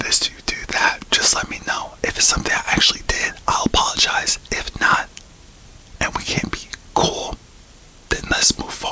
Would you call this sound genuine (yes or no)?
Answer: no